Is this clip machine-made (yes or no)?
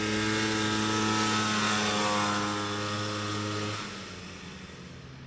no